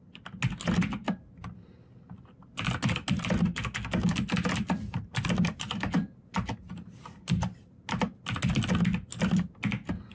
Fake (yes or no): no